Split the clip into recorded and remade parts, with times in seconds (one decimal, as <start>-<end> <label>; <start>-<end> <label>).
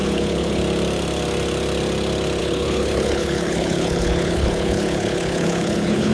0.0-0.6 remade; 0.6-2.4 recorded; 2.4-6.1 remade